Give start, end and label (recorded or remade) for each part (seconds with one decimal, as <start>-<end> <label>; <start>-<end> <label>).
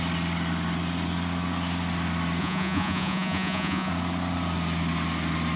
0.0-2.4 recorded; 2.4-3.9 remade; 3.9-5.6 recorded